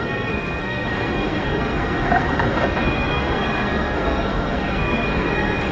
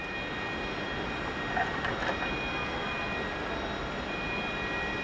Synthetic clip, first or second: first